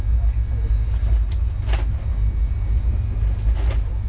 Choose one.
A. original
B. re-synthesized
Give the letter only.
A